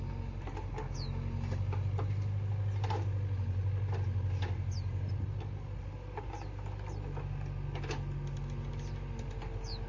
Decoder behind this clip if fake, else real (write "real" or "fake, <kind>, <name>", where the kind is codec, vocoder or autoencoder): real